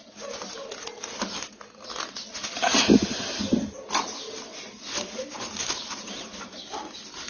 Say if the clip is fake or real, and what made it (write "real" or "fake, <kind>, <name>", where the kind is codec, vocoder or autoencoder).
real